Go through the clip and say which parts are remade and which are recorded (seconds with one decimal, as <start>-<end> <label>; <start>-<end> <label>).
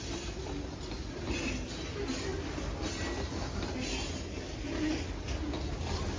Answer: 0.0-6.2 recorded